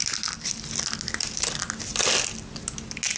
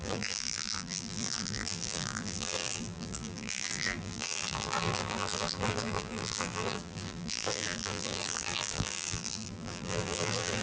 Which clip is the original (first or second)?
first